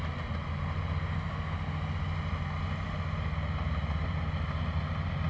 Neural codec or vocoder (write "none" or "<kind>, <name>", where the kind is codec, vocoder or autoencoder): none